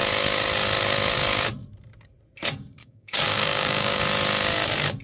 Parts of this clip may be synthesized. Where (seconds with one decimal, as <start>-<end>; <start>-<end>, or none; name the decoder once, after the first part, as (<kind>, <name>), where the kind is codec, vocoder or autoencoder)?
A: 2.8-4.0 (codec, DAC)